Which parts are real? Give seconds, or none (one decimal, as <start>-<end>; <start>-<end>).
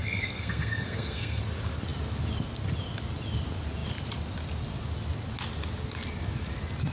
1.4-6.9